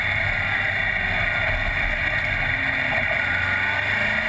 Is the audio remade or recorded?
recorded